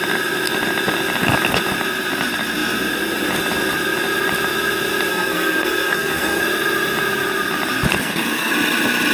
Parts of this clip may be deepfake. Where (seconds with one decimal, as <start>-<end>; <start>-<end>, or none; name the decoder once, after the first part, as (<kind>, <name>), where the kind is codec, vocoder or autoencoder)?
5.1-6.4 (codec, SNAC); 8.0-8.5